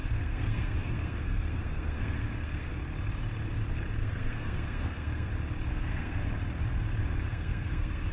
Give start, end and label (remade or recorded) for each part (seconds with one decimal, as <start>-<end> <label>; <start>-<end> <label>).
0.0-2.7 remade; 2.7-4.0 recorded; 4.0-5.3 remade; 5.3-5.7 recorded; 5.7-6.3 remade; 6.3-7.3 recorded; 7.3-8.1 remade